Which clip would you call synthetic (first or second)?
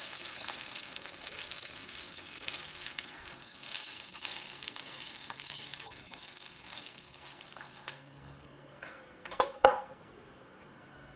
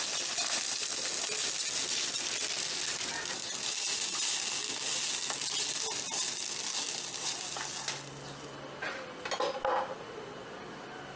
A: first